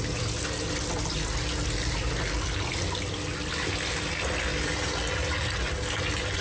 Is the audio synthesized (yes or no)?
no